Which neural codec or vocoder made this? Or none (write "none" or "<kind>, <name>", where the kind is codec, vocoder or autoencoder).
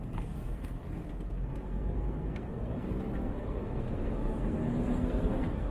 codec, SNAC